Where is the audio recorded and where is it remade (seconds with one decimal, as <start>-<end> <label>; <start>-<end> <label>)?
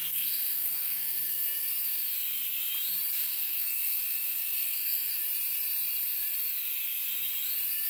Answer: 0.0-1.7 remade; 1.7-3.2 recorded; 3.2-5.2 remade; 5.2-7.9 recorded